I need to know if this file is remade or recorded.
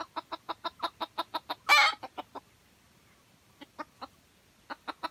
recorded